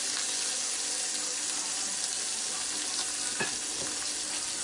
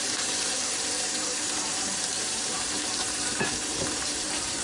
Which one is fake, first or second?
second